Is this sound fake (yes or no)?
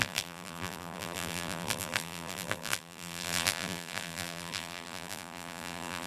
yes